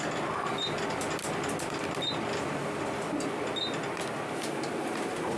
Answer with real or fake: real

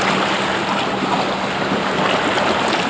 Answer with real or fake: real